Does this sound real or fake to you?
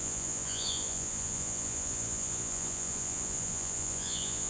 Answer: fake